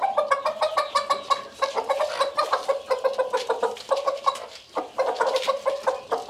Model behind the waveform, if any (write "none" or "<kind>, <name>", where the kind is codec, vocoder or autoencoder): none